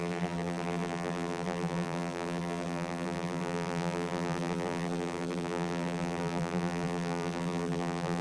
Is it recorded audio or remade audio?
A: remade